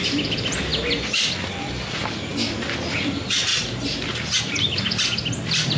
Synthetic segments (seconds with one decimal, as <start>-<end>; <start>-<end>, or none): 0.0-2.3; 2.9-3.5; 4.4-5.8